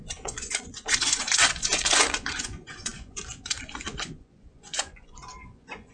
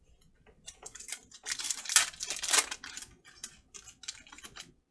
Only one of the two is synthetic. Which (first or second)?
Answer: first